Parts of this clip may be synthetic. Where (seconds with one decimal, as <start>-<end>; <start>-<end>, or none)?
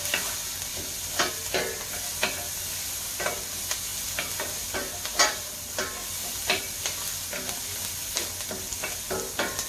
0.7-1.3; 6.0-6.8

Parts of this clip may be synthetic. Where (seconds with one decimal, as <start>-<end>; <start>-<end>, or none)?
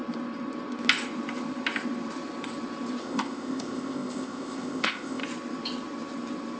3.0-5.2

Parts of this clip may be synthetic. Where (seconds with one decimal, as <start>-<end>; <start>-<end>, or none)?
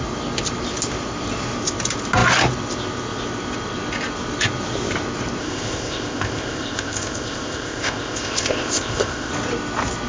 5.4-9.3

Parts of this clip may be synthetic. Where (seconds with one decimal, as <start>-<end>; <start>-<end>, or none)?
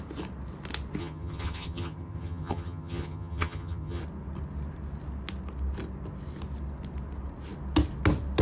1.0-4.0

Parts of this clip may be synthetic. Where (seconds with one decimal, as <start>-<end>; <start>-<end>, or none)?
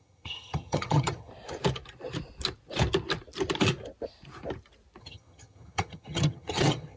0.0-1.3; 5.0-7.0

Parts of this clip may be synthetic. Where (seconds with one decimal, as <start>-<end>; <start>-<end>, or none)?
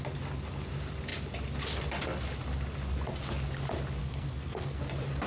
4.0-4.8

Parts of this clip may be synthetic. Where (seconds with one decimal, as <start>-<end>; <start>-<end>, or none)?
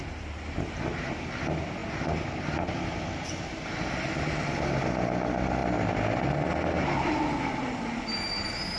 none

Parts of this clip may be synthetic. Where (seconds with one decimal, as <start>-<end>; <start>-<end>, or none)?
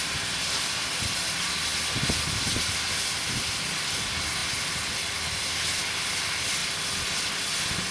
none